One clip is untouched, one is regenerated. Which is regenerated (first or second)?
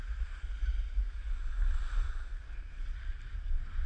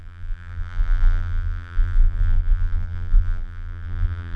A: second